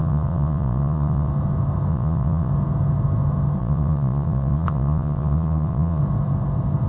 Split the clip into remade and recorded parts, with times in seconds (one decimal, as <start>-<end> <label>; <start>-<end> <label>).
0.0-1.3 remade; 1.3-1.9 recorded; 1.9-2.5 remade; 2.5-3.6 recorded; 3.6-6.0 remade; 6.0-6.9 recorded